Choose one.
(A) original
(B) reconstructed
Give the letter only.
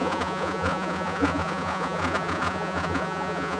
B